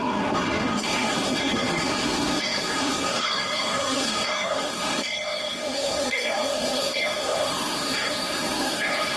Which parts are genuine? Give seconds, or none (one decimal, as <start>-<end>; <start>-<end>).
none